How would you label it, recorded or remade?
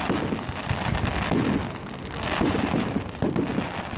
recorded